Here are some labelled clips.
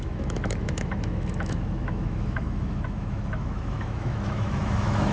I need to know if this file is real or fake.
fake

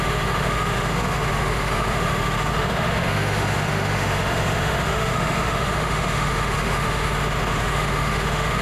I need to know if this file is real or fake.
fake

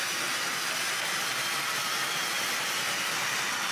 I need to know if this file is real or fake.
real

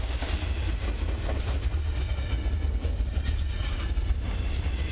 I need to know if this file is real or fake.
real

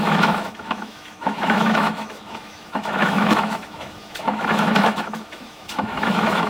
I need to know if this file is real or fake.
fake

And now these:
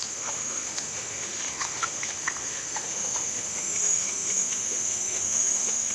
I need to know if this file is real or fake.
fake